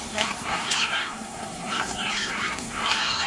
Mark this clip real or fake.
fake